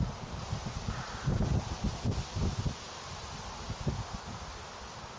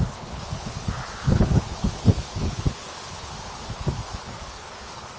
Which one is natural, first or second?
first